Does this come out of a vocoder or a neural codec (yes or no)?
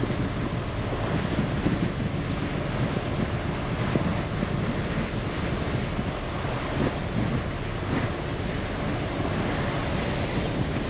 no